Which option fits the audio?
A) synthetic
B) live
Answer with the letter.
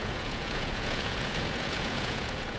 A